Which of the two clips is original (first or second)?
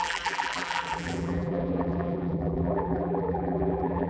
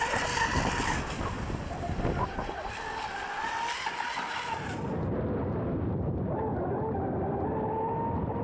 second